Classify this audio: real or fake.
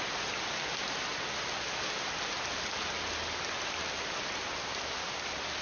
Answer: real